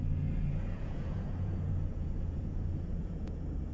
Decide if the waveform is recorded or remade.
remade